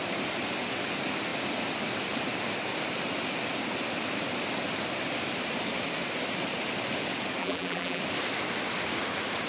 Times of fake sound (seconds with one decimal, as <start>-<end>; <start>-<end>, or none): 7.4-8.0